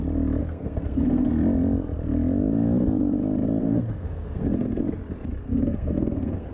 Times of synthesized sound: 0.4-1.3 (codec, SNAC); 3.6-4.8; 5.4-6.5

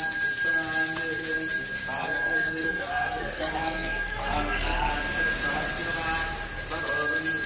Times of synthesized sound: 2.0-4.9 (codec, SNAC)

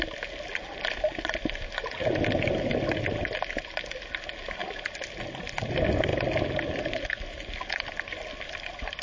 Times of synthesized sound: none

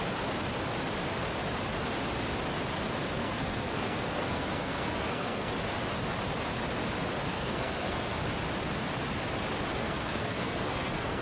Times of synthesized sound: 3.2-5.5 (codec, SNAC); 7.3-8.2; 9.8-11.2

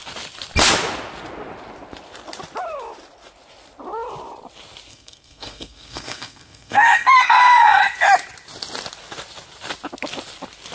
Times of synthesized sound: 4.9-7.8 (codec, SNAC)

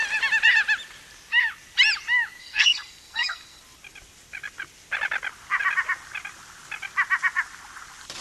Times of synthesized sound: 2.4-3.6 (codec, SNAC)